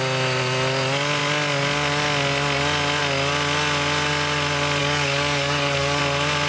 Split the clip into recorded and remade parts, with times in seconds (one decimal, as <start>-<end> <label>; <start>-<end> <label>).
0.0-4.8 recorded; 4.8-6.0 remade; 6.0-6.5 recorded